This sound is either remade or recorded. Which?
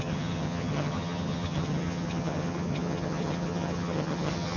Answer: remade